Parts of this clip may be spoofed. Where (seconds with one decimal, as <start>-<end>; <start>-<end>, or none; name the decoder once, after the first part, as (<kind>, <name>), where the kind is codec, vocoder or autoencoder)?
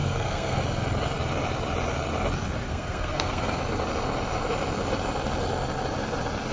0.0-0.6 (codec, SNAC); 2.7-3.6